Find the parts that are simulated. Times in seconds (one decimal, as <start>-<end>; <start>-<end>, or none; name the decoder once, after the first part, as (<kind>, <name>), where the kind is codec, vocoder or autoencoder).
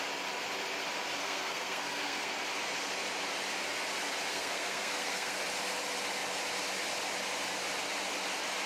1.2-2.3 (codec, SNAC); 4.3-5.4